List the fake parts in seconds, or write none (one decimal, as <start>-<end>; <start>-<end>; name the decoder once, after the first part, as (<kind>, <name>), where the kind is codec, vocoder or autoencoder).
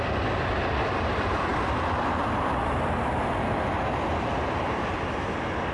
none